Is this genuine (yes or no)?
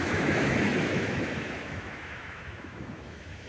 no